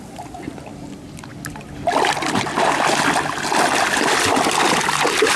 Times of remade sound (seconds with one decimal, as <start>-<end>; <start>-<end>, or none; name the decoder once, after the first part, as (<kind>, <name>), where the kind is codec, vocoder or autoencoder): none